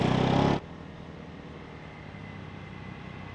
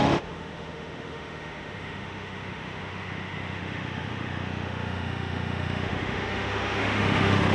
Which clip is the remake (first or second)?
second